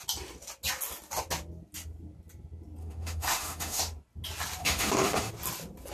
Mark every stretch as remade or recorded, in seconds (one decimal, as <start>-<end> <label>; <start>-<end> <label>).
0.0-2.8 recorded; 2.8-3.8 remade; 3.8-4.6 recorded; 4.6-5.3 remade; 5.3-5.9 recorded